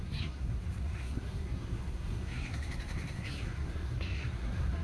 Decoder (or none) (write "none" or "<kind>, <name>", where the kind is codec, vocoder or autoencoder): codec, SNAC